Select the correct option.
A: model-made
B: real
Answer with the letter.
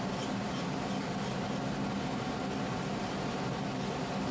B